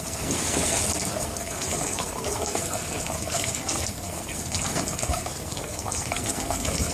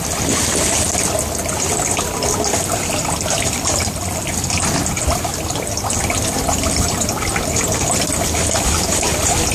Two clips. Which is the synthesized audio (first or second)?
first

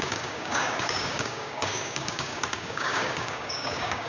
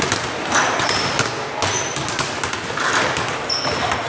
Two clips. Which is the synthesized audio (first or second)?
first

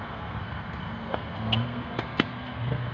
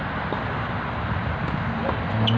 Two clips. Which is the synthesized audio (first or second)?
first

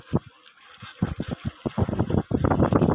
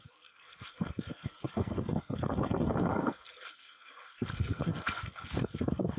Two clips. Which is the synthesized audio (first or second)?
second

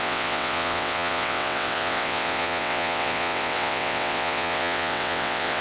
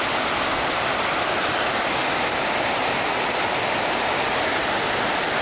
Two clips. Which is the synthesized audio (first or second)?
first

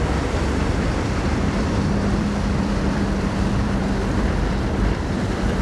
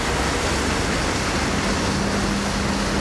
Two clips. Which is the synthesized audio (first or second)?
first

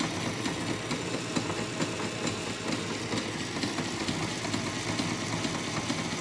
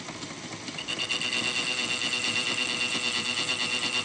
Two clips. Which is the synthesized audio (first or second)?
second